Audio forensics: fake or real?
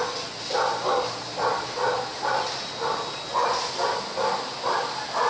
real